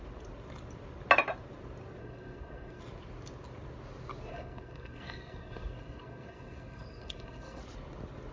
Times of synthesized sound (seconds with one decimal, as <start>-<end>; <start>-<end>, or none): 2.0-2.8; 4.3-7.6